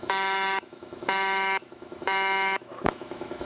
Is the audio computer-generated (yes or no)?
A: yes